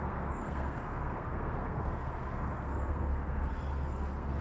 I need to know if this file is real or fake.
fake